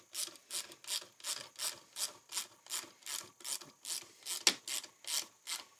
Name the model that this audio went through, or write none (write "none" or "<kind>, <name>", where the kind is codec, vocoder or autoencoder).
none